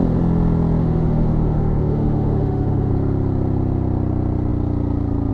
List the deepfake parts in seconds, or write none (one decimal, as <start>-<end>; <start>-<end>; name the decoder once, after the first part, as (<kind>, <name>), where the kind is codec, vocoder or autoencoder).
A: 0.8-2.9 (autoencoder, DAC-VAE)